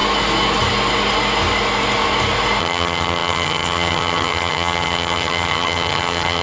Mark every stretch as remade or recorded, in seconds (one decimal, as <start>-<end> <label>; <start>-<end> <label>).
0.0-2.6 recorded; 2.6-6.4 remade